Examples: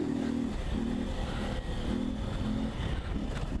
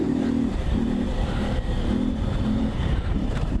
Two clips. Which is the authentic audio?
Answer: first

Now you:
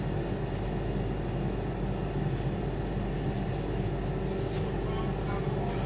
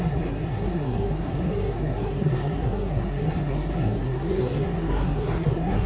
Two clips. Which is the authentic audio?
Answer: first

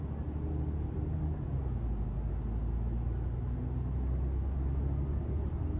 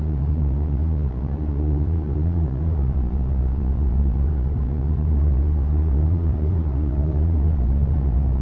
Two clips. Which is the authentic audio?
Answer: first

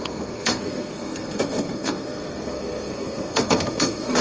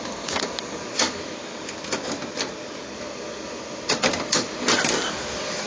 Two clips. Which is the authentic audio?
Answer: second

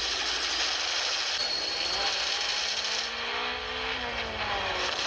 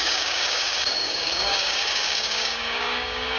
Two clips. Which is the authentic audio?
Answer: first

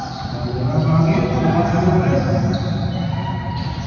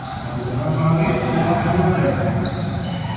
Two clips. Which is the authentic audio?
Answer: first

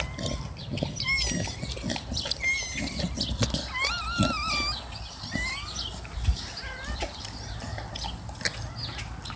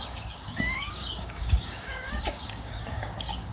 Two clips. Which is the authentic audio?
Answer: first